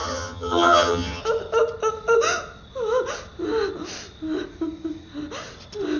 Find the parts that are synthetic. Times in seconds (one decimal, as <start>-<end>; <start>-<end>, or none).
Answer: 0.0-1.2